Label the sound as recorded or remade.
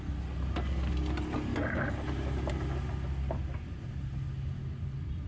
recorded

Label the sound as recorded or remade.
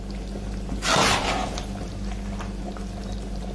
recorded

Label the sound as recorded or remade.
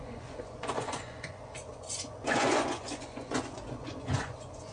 remade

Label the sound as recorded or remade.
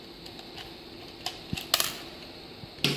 recorded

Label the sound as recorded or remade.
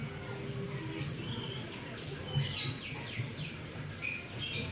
recorded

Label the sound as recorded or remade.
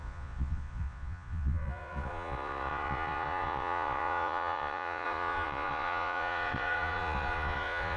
remade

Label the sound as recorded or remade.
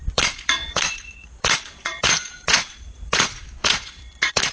remade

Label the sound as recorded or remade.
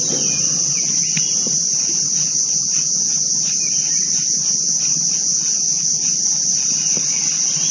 recorded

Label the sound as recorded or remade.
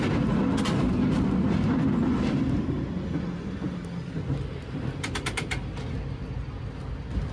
recorded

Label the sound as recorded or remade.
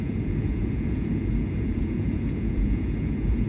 remade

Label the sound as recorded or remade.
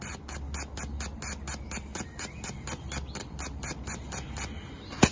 recorded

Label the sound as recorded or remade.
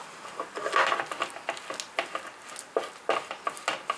recorded